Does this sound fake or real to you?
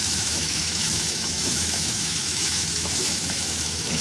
fake